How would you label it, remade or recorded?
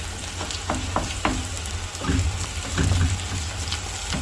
recorded